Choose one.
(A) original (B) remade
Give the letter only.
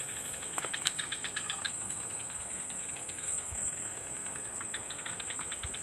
B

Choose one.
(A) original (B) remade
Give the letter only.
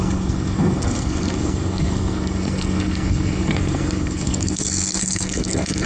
B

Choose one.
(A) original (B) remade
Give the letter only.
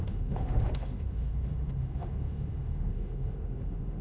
B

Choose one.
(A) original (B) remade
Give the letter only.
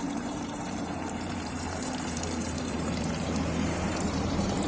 B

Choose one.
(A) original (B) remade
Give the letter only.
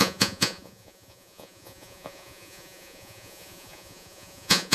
B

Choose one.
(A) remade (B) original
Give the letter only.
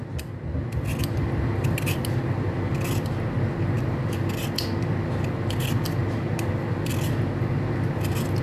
B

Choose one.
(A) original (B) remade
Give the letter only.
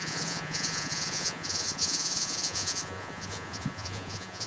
B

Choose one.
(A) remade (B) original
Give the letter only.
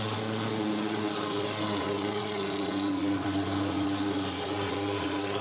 A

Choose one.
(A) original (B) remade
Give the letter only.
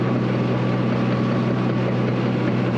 A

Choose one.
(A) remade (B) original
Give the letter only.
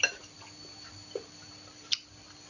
B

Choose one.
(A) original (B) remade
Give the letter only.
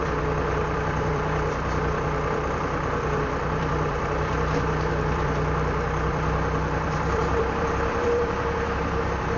B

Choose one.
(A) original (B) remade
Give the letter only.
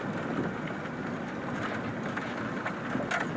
A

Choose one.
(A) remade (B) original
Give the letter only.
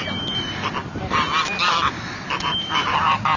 B